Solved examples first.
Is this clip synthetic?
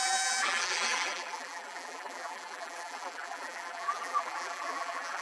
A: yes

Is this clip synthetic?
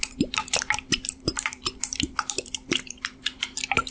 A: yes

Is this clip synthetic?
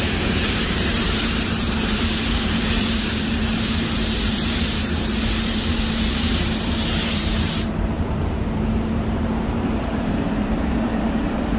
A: yes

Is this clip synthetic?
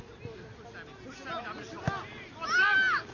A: no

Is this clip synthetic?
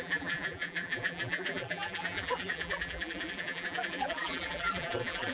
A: yes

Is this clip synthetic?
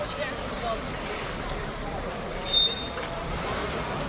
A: yes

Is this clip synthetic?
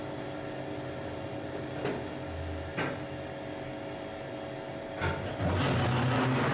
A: no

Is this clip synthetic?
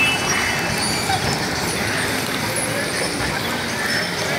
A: no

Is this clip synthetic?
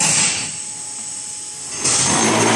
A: no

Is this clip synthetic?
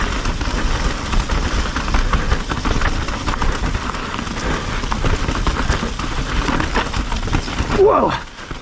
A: no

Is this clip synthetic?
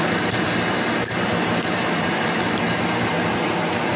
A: yes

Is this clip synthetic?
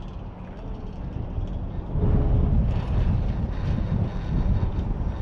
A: no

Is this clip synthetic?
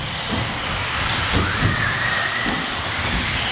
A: yes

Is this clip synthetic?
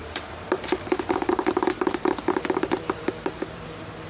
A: yes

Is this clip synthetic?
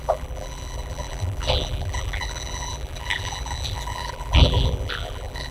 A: yes